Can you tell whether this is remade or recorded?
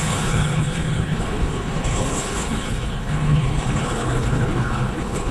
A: remade